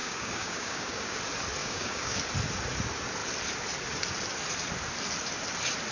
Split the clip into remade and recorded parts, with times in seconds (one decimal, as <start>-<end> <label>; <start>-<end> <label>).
0.0-1.2 remade; 1.2-1.6 recorded; 1.6-2.2 remade; 2.2-5.9 recorded